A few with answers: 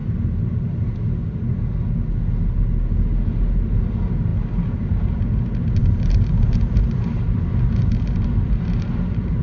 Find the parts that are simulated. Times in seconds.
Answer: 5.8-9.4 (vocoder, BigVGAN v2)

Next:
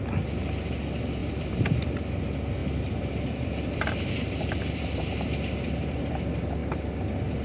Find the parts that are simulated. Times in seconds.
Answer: 1.2-2.0 (vocoder, BigVGAN v2); 2.6-6.1

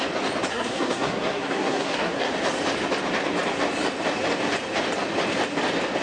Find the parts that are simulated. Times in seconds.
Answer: 0.5-2.3 (codec, SNAC)

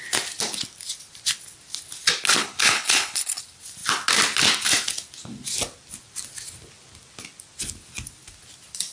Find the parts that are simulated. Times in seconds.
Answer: 2.4-3.4 (codec, HILCodec)

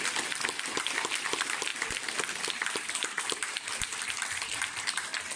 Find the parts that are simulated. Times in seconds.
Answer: 0.0-5.4 (vocoder, BigVGAN v2)